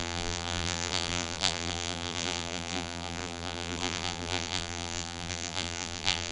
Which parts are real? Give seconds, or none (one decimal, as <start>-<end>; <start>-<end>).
none